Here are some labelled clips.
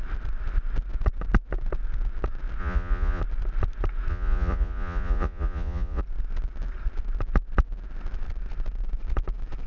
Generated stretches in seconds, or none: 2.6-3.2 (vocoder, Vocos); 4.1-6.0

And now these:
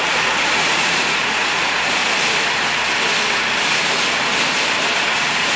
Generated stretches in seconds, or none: 0.0-2.0 (vocoder, Vocos); 5.0-5.6

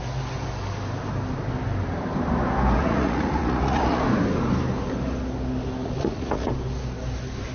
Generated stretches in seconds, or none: 2.8-4.0 (vocoder, Vocos); 5.8-6.5